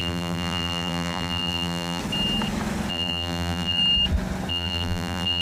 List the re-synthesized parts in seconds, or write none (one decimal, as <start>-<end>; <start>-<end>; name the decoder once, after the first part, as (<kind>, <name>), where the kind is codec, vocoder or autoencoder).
0.0-2.0 (vocoder, BigVGAN v2); 2.9-3.8; 4.5-5.4